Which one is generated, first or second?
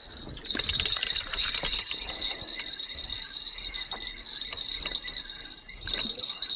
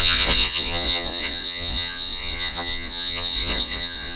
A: second